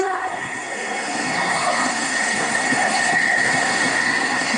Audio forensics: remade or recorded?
remade